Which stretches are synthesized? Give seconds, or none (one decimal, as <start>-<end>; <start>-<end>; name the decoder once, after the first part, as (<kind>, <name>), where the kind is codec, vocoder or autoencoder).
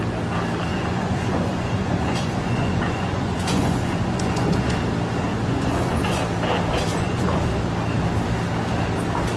0.7-4.8 (vocoder, Vocos); 5.3-6.2; 6.9-7.5